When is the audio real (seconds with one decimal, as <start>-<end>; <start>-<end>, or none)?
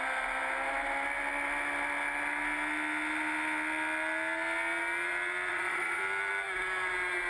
0.0-5.5; 6.0-7.3